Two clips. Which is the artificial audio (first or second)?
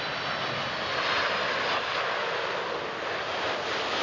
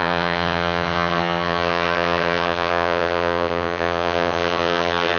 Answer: second